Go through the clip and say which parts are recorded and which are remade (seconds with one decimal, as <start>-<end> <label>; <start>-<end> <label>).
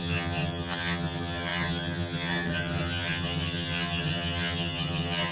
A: 0.0-5.3 remade